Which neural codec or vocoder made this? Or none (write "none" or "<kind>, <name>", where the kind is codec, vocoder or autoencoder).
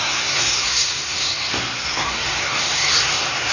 codec, SNAC